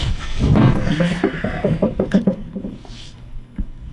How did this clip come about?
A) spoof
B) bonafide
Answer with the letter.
A